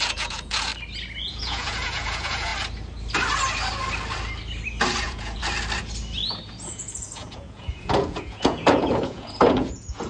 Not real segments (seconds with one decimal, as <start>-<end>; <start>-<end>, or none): 0.0-0.7; 1.2-2.5; 5.0-5.4; 6.5-10.1

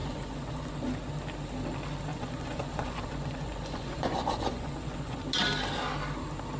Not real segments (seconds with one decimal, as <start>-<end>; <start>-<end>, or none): 0.0-0.7; 2.1-5.2

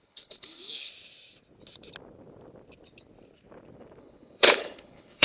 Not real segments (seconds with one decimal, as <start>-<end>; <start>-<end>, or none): 0.0-0.9; 4.0-5.2

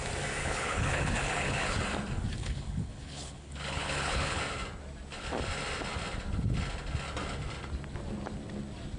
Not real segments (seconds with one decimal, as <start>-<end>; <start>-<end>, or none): 0.4-1.8; 2.4-4.4

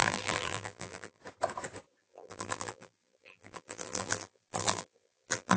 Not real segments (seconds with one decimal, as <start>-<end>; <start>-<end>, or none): 0.0-1.2; 2.0-5.6